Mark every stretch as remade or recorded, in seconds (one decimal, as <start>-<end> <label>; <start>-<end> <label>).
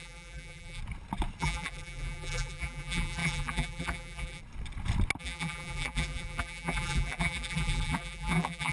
0.0-0.8 remade; 0.8-1.4 recorded; 1.4-4.4 remade; 4.4-5.2 recorded; 5.2-8.7 remade